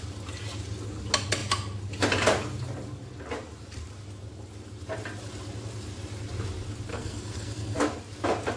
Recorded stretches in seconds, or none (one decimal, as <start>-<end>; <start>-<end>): 0.0-6.9; 7.8-8.6